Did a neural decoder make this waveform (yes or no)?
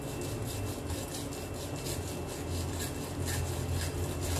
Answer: no